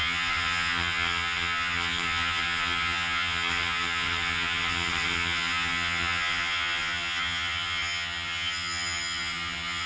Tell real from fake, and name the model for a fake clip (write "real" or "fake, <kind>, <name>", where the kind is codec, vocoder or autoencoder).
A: fake, vocoder, HiFi-GAN